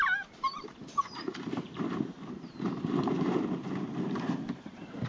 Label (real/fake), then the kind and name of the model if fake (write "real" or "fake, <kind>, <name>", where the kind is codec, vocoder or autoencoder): fake, vocoder, BigVGAN v2